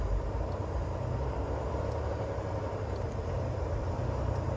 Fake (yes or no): yes